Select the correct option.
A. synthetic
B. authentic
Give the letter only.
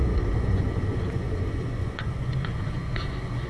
A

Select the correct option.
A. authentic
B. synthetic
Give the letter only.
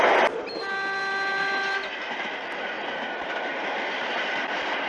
A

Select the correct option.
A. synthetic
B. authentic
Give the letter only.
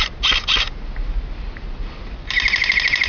B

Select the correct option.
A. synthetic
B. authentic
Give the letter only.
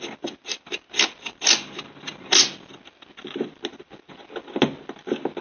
B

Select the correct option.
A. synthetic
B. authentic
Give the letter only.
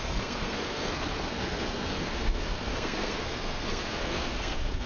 A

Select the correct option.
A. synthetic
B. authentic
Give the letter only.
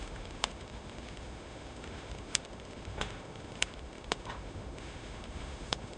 A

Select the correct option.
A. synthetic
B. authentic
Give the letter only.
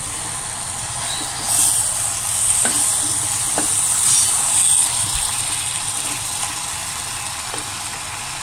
B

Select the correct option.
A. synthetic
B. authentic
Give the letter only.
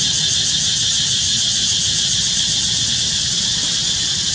B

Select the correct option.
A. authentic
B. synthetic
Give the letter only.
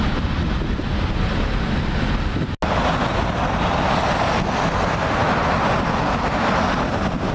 A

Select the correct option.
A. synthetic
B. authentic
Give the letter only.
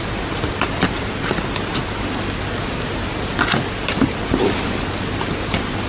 B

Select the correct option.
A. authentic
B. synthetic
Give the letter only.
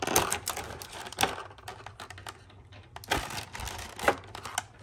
A